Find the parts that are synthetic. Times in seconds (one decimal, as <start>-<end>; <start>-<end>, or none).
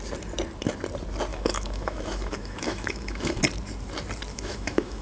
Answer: 1.3-3.4; 4.3-5.0